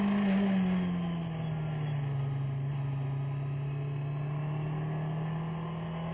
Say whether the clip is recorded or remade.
recorded